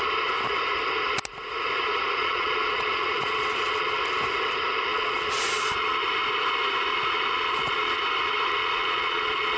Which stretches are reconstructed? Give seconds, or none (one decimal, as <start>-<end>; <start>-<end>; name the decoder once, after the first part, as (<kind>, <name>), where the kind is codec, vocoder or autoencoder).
2.2-4.0 (vocoder, Vocos); 4.9-6.0; 6.9-8.0; 8.6-9.6